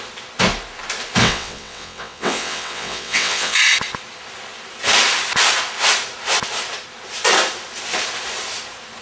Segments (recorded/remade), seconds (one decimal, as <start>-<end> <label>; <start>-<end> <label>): 0.0-1.2 recorded; 1.2-3.6 remade; 3.6-9.0 recorded